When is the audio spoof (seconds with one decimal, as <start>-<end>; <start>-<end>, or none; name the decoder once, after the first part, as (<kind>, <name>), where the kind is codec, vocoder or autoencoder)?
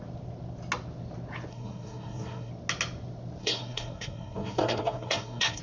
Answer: 1.5-2.5 (codec, SNAC); 3.4-5.6